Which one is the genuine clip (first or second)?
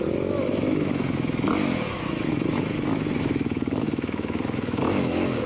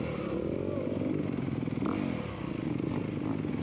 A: second